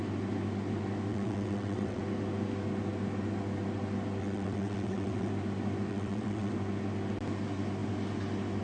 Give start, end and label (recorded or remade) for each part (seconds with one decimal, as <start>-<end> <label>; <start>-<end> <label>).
0.0-1.1 recorded; 1.1-2.0 remade; 2.0-4.2 recorded; 4.2-5.3 remade; 5.3-5.9 recorded; 5.9-6.5 remade; 6.5-8.6 recorded